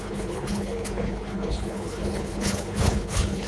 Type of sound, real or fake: fake